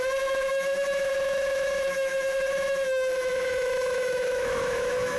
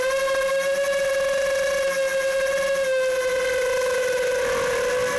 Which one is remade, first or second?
first